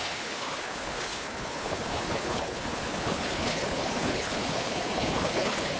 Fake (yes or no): yes